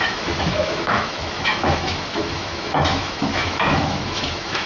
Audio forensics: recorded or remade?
remade